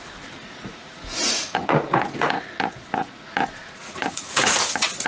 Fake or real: fake